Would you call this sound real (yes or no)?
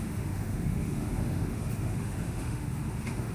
no